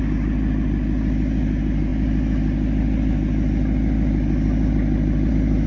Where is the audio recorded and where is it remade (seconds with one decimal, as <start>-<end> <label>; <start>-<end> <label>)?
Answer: 0.0-5.7 recorded